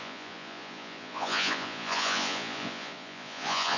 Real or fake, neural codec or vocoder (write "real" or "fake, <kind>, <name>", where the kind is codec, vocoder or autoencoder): fake, vocoder, Vocos